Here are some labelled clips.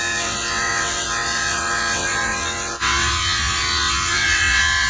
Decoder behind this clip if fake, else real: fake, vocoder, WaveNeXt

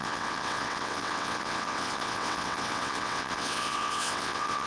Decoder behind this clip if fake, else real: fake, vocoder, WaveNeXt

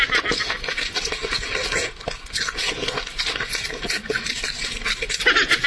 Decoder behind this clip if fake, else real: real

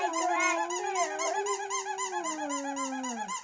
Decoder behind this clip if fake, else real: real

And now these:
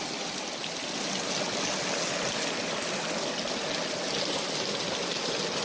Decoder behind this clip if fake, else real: real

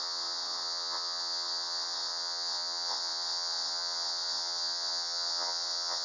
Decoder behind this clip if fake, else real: fake, vocoder, WaveNeXt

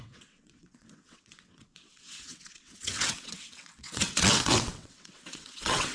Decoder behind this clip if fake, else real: fake, vocoder, WaveNeXt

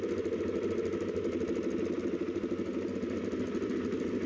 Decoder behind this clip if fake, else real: real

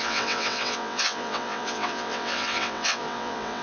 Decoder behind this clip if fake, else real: fake, vocoder, WaveNeXt